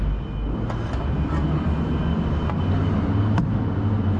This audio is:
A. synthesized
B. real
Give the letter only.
B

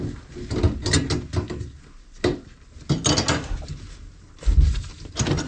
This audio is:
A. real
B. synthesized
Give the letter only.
A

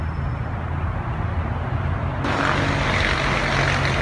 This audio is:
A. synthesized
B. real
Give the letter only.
B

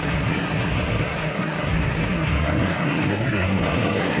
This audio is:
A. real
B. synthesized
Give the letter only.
B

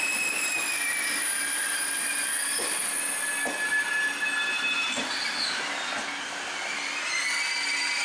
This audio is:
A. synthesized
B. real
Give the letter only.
B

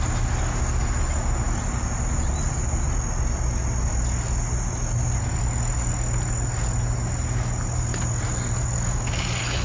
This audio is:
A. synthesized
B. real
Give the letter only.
B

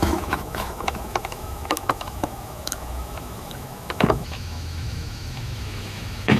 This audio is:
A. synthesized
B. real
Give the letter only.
A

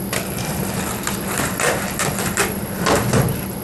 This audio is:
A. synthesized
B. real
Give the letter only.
A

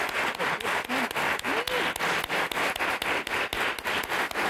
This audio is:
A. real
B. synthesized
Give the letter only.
A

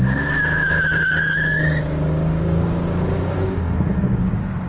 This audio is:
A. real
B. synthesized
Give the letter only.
B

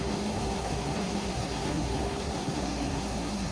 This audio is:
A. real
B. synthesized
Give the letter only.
B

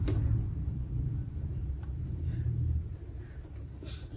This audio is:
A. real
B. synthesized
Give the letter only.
B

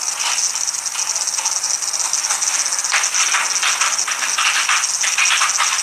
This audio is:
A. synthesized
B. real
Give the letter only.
B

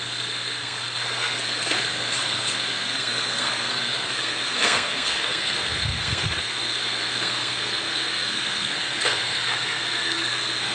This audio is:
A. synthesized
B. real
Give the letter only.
A